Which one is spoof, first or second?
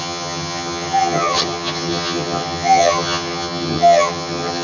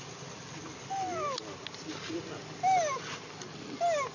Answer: first